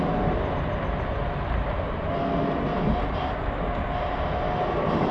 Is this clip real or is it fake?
real